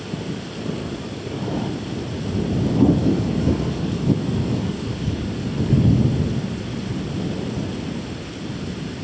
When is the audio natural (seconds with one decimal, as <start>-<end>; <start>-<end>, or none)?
0.0-0.8; 1.7-3.0; 6.0-9.0